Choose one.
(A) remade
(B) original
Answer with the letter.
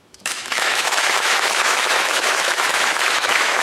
A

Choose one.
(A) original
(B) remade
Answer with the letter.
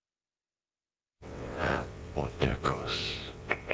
B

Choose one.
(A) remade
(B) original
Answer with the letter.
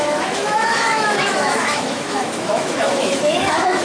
A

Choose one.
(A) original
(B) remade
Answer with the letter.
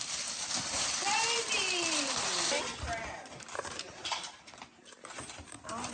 B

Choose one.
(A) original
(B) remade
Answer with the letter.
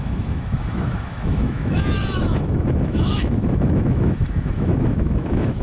B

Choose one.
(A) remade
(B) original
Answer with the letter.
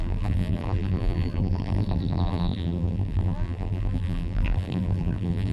A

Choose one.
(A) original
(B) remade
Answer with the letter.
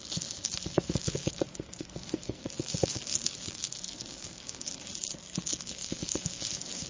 B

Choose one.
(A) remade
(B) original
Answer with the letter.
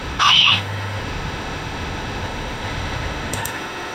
A